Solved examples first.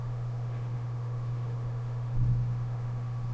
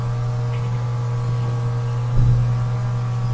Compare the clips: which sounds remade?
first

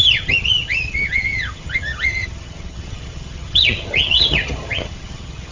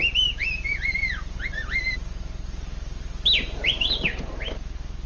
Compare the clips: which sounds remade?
first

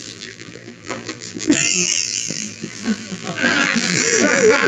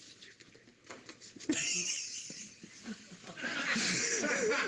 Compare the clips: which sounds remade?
first